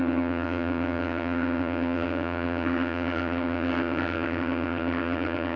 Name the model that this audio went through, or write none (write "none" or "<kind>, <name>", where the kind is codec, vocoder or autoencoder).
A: vocoder, HiFi-GAN